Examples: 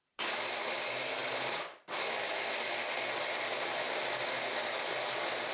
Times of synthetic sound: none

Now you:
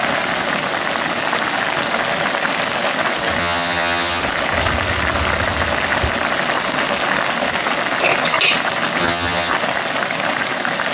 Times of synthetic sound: 3.4-4.2 (vocoder, HiFi-GAN); 9.0-9.5

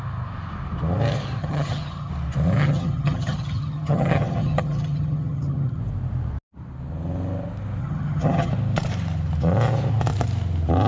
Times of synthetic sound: 1.4-2.1 (vocoder, HiFi-GAN); 2.6-5.8; 7.8-8.5

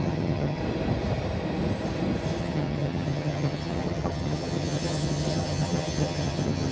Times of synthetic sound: 0.0-0.6 (vocoder, HiFi-GAN); 2.4-6.7

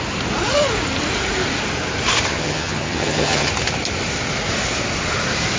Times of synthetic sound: 2.3-3.5 (vocoder, HiFi-GAN)